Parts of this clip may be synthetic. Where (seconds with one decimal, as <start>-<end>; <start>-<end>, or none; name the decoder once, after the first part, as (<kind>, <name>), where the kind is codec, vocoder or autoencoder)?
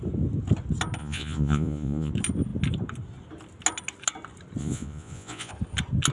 1.0-2.1 (vocoder, Vocos); 4.6-5.5